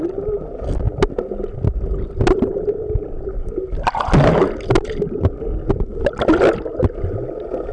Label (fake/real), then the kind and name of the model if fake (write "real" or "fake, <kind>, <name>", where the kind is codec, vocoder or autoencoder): real